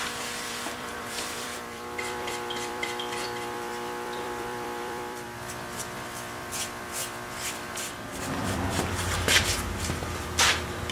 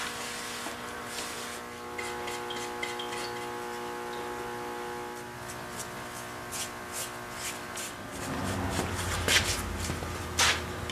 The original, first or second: second